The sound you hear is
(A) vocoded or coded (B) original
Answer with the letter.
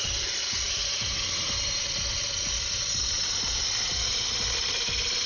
B